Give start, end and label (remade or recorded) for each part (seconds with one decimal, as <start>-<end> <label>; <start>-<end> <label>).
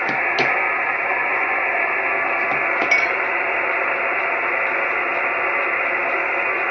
0.0-1.2 recorded; 1.2-1.8 remade; 1.8-6.7 recorded